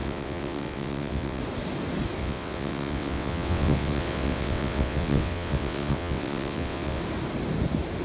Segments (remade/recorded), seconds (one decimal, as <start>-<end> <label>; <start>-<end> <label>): 0.0-1.4 remade; 1.4-2.2 recorded; 2.2-7.0 remade; 7.0-8.0 recorded